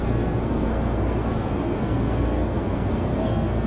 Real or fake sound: fake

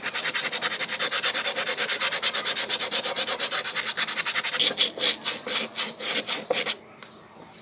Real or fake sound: real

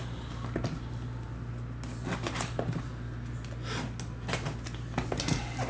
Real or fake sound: real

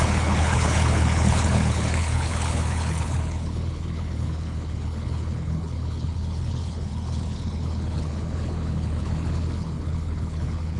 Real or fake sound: fake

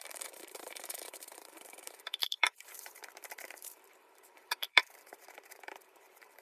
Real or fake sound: fake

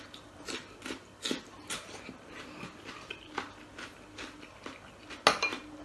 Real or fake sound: real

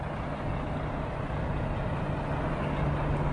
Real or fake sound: real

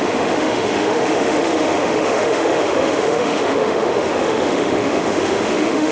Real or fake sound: fake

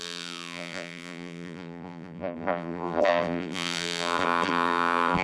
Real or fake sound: fake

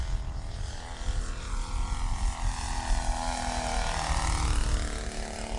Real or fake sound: real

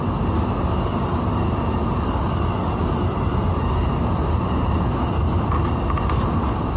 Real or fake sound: real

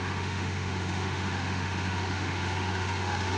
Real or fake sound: fake